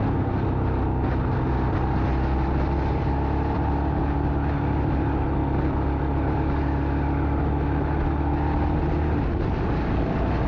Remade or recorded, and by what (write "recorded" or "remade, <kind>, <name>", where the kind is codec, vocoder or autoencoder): recorded